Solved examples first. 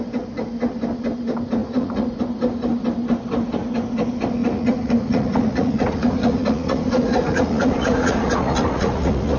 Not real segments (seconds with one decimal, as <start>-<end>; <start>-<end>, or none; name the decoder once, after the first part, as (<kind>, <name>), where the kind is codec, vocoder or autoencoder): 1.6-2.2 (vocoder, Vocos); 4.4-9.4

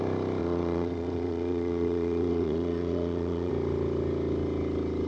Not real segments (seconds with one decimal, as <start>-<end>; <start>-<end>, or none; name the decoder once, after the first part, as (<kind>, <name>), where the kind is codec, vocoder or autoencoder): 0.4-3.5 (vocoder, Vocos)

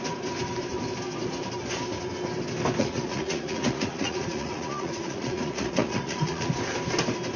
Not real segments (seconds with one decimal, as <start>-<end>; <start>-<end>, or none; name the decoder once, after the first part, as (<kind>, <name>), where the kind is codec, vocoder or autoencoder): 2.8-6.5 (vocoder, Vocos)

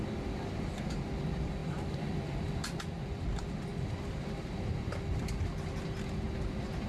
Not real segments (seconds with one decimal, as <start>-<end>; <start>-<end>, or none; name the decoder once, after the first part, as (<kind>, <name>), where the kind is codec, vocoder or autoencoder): none

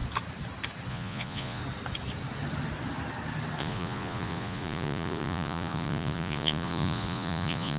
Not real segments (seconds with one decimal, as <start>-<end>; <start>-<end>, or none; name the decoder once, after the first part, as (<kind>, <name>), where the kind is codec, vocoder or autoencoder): 0.9-1.6 (vocoder, Vocos); 3.6-7.8

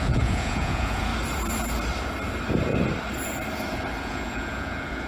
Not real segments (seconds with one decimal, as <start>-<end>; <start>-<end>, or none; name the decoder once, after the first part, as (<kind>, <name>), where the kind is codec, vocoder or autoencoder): 0.0-1.1 (vocoder, Vocos); 4.0-5.1